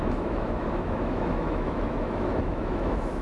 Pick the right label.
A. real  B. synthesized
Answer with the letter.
B